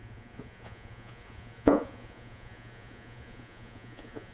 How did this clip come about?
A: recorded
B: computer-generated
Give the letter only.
B